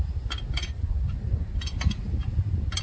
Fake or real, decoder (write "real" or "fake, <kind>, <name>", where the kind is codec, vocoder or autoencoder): real